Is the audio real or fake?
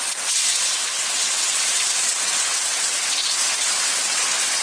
fake